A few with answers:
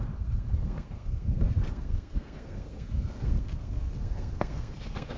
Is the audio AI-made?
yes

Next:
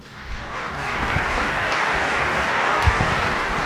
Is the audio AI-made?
yes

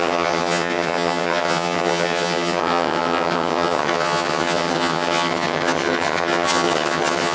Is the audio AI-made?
yes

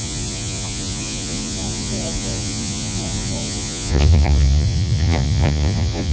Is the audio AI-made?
yes